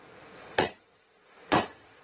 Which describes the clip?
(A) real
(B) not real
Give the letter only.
B